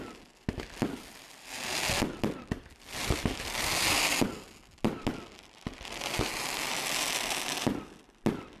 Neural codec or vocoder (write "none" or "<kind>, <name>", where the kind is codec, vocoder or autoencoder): none